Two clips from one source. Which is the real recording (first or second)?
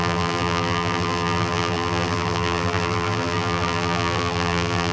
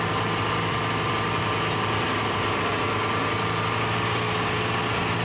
second